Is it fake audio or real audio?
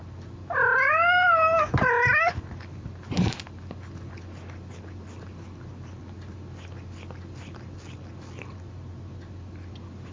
real